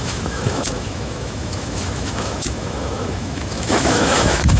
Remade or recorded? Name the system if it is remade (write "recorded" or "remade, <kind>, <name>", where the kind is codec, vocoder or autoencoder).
remade, autoencoder, DAC-VAE